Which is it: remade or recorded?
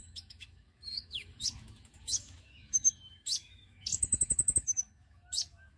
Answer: remade